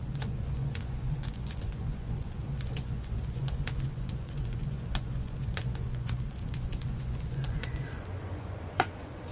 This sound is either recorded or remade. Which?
remade